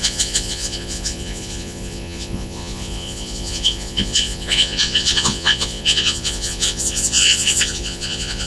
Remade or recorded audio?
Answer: remade